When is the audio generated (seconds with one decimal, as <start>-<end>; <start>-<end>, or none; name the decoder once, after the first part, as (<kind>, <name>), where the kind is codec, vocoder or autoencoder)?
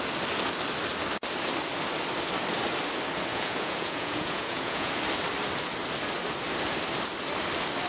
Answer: 3.3-4.9 (vocoder, Vocos)